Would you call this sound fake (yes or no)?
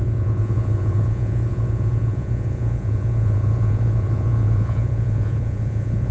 yes